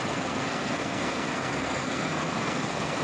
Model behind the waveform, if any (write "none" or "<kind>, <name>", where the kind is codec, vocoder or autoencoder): codec, SNAC